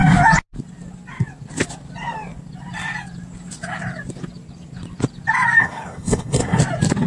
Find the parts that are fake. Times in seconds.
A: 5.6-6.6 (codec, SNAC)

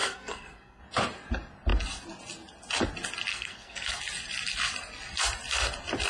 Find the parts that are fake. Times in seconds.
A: 0.0-0.8 (codec, SNAC); 3.3-4.0